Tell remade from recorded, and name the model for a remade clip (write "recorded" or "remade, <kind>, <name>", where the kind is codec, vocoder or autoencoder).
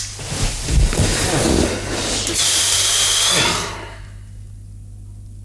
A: recorded